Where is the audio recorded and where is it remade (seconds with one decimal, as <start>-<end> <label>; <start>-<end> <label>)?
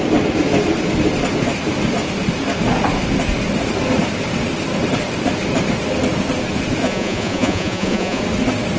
0.0-6.8 recorded; 6.8-8.2 remade; 8.2-8.8 recorded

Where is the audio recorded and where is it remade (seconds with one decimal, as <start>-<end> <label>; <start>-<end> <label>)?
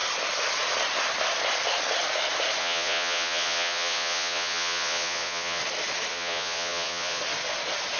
0.0-2.6 recorded; 2.6-5.6 remade; 5.6-6.1 recorded; 6.1-7.2 remade; 7.2-8.0 recorded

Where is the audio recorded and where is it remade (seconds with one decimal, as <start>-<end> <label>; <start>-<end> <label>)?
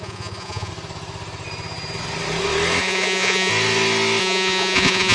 0.0-0.7 remade; 0.7-2.8 recorded; 2.8-3.5 remade; 3.5-4.2 recorded; 4.2-5.1 remade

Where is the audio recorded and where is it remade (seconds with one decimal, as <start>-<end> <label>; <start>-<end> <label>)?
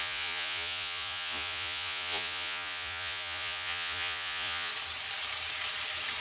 0.0-4.7 remade; 4.7-6.2 recorded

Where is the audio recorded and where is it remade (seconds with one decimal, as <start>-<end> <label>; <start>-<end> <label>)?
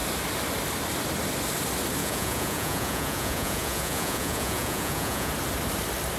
0.0-2.0 recorded; 2.0-5.3 remade; 5.3-6.2 recorded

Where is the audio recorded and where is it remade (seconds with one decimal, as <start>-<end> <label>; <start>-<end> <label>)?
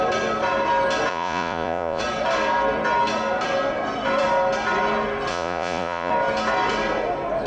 0.0-1.1 recorded; 1.1-2.0 remade; 2.0-5.3 recorded; 5.3-6.1 remade; 6.1-7.5 recorded